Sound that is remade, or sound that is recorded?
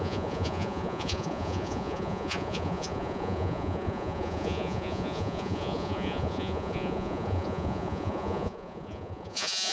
remade